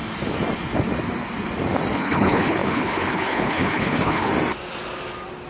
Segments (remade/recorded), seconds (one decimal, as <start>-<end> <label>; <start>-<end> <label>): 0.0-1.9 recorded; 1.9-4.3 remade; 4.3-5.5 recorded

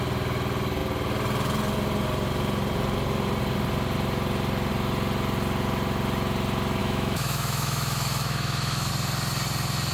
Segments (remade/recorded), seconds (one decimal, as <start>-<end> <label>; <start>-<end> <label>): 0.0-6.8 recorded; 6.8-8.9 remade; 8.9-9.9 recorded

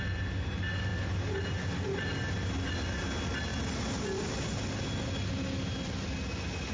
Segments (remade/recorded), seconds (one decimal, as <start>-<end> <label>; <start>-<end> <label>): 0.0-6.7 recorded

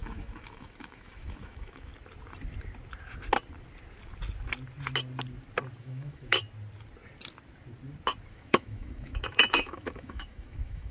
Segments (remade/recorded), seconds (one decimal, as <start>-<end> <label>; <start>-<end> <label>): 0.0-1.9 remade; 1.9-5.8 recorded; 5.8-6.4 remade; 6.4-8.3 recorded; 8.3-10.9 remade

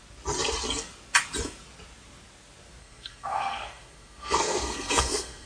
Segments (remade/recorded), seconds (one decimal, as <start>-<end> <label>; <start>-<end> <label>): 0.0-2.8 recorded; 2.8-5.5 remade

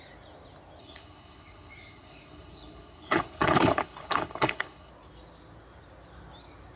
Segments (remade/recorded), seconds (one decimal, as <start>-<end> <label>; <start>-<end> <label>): 0.0-0.8 recorded; 0.8-4.9 remade; 4.9-6.8 recorded

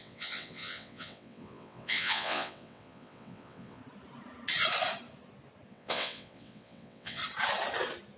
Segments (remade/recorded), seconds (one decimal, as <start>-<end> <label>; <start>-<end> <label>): 0.0-3.8 remade; 3.8-5.7 recorded; 5.7-7.2 remade; 7.2-8.2 recorded